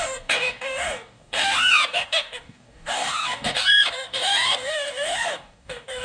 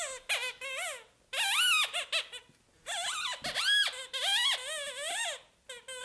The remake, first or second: first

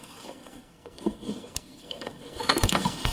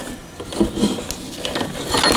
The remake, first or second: first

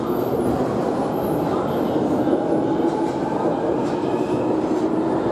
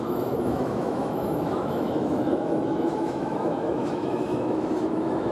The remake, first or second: second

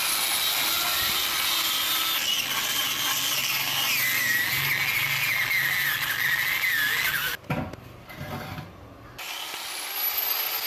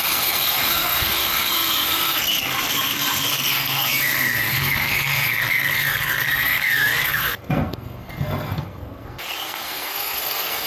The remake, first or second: second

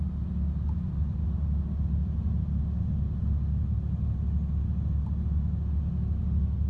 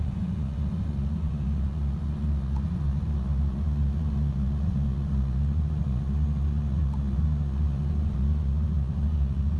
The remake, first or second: second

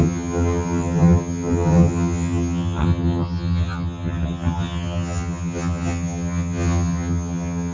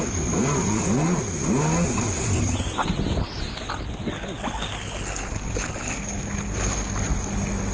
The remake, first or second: first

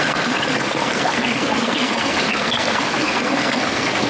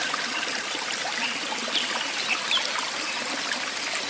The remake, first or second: first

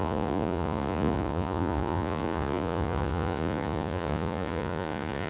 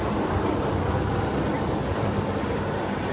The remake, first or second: first